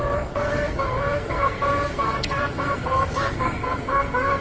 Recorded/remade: remade